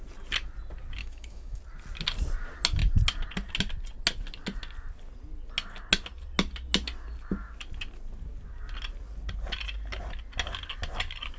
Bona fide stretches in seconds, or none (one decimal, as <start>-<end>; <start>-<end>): 0.0-1.0; 1.6-11.4